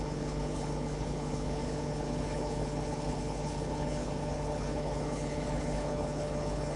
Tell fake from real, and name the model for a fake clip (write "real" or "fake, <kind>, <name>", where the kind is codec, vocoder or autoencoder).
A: fake, codec, HILCodec